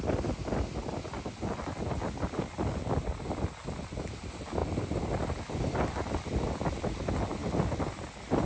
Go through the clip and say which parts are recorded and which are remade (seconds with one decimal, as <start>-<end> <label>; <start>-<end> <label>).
0.0-8.4 recorded